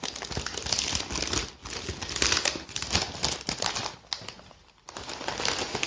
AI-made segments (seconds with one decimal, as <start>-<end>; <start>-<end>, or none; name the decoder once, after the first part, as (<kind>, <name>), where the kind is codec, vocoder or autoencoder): none